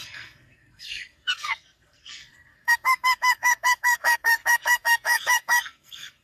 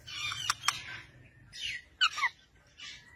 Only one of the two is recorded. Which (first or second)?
second